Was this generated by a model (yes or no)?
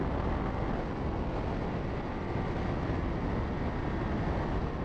no